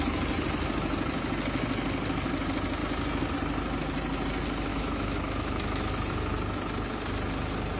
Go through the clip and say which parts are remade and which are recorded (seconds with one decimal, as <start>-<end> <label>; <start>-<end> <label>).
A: 0.0-4.7 recorded; 4.7-5.9 remade; 5.9-7.8 recorded